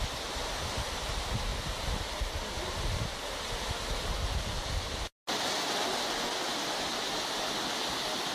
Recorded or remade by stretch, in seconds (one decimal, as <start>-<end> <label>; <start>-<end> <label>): 0.0-8.3 recorded